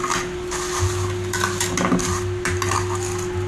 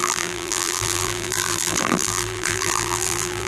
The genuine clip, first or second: first